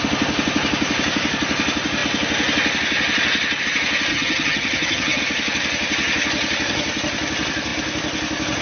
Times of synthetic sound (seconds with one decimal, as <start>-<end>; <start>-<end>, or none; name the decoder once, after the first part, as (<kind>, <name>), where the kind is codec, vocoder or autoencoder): 4.1-5.2 (vocoder, HiFi-GAN)